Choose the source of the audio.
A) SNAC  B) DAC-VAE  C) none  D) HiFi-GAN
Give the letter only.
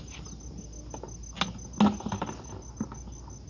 C